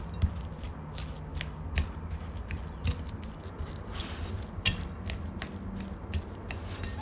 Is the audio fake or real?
real